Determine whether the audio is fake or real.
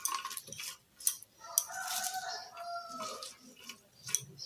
real